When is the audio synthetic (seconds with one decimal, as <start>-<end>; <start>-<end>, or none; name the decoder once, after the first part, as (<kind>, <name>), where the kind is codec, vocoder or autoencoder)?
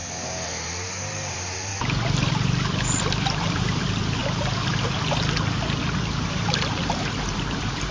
0.0-1.7 (vocoder, BigVGAN v2); 2.3-4.2; 6.3-7.9